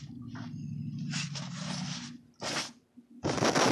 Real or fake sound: real